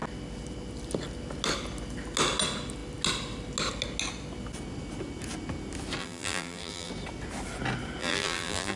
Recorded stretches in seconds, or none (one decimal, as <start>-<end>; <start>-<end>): 0.0-6.0; 6.9-8.0